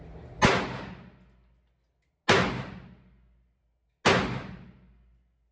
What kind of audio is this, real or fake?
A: real